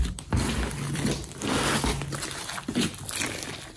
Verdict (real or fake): real